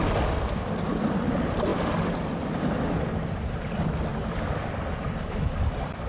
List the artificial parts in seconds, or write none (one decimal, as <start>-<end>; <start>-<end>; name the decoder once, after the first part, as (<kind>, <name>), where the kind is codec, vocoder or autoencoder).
none